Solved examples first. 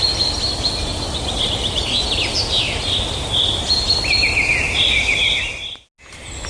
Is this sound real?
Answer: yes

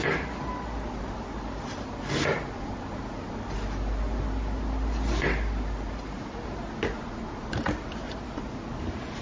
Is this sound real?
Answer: yes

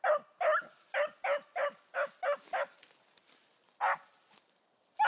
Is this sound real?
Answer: yes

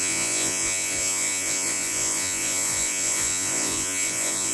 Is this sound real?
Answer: no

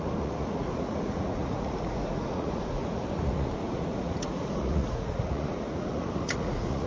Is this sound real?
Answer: no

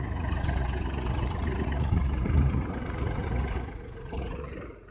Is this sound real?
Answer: no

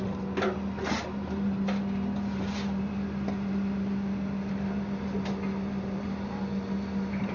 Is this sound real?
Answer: yes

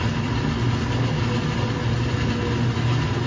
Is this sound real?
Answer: yes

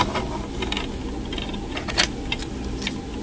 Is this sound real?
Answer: yes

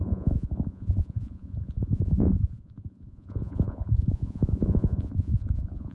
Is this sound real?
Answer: no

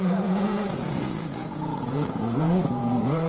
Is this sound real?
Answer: no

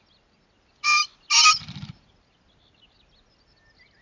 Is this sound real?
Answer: yes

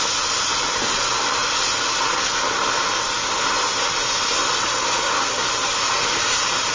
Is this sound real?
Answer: yes